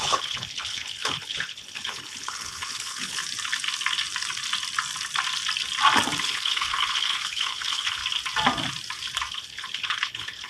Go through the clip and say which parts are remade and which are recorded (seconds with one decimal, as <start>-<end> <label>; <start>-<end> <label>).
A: 0.0-3.2 remade; 3.2-6.2 recorded; 6.2-8.0 remade; 8.0-9.3 recorded; 9.3-10.5 remade